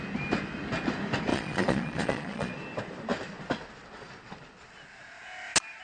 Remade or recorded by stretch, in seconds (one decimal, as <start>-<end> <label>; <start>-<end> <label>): 0.0-1.3 recorded; 1.3-2.5 remade; 2.5-5.8 recorded